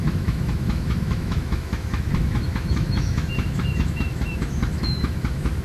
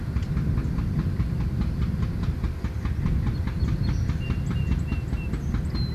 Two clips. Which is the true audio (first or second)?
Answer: second